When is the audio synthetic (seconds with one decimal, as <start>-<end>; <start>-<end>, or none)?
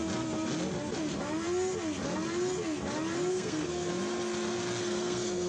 3.3-3.9; 4.8-5.5